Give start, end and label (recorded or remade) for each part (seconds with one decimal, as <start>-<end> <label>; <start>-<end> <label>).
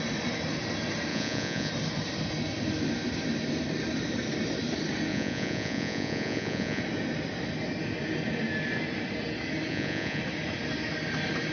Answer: 0.0-1.1 recorded; 1.1-1.7 remade; 1.7-5.1 recorded; 5.1-6.8 remade; 6.8-9.7 recorded; 9.7-10.2 remade; 10.2-11.5 recorded